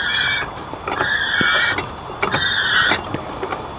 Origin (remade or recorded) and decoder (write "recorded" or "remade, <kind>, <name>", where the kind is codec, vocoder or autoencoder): recorded